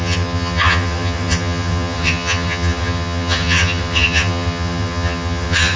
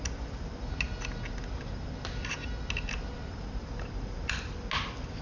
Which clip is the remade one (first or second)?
first